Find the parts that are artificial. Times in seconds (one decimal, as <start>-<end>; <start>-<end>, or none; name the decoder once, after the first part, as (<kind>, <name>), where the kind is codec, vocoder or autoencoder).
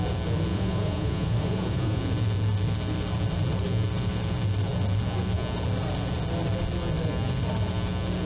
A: 0.5-2.0 (vocoder, Vocos)